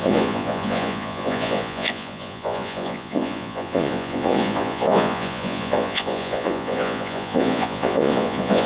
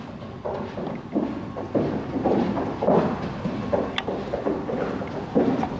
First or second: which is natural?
second